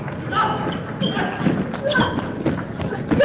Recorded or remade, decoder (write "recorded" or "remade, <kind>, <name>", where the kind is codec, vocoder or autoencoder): recorded